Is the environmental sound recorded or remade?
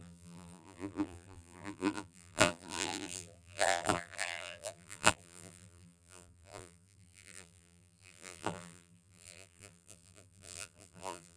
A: remade